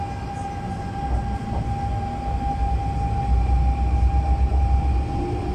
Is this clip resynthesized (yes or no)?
no